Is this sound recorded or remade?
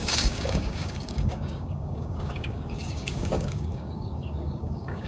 remade